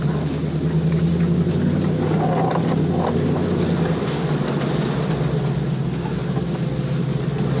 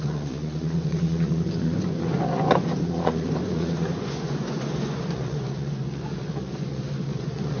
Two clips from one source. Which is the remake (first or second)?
second